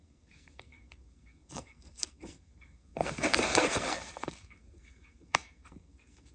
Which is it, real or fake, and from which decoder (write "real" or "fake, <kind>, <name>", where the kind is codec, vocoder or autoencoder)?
fake, codec, SNAC